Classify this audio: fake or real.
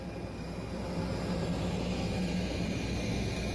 real